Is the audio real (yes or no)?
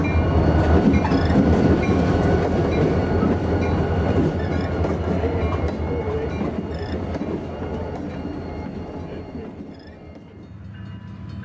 yes